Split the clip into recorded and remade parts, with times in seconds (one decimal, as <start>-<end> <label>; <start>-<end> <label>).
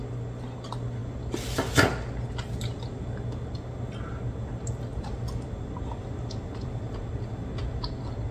0.0-4.9 recorded; 4.9-6.8 remade; 6.8-8.3 recorded